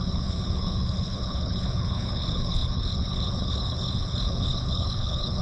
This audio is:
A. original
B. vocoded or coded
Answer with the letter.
B